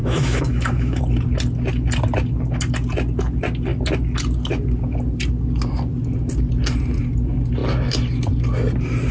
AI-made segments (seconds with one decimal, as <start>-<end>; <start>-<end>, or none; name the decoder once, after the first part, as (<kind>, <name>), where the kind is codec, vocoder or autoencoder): 0.0-1.0 (autoencoder, DAC-VAE)